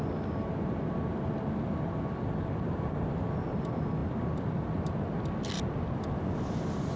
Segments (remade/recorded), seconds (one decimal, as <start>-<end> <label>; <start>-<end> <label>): 0.0-7.0 recorded